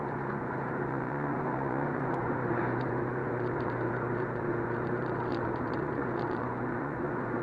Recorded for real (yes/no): no